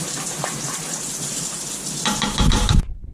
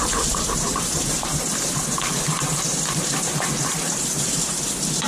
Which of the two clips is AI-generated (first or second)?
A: second